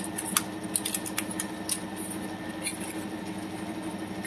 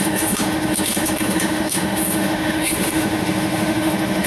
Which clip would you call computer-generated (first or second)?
second